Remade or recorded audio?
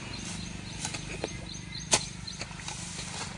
recorded